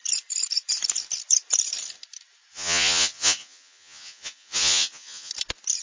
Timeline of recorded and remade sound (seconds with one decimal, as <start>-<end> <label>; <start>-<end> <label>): 0.0-2.5 recorded; 2.5-5.3 remade; 5.3-5.8 recorded